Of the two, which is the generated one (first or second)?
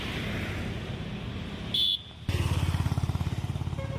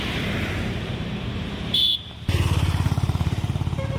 second